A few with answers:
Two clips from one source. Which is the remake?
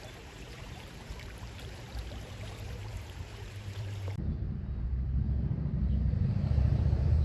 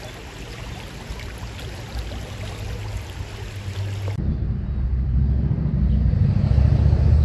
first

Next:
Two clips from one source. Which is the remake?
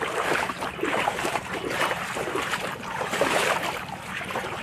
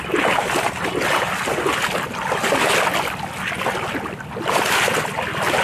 first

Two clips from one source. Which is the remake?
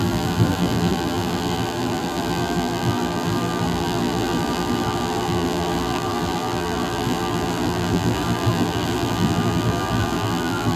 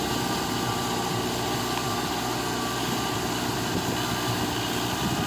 first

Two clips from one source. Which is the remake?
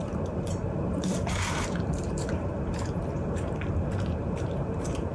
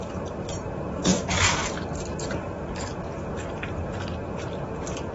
first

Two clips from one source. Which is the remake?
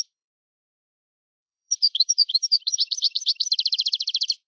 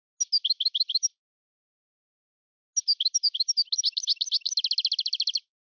first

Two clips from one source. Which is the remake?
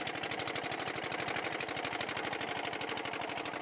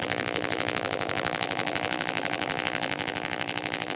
second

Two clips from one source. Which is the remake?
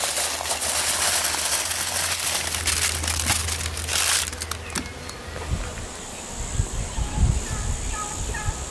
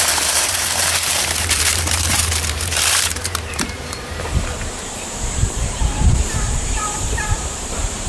second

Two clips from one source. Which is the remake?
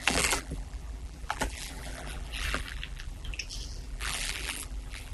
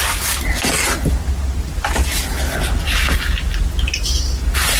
first